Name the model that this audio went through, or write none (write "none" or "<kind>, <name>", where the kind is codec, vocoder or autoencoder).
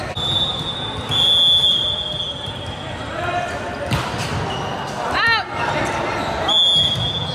none